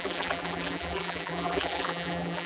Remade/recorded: remade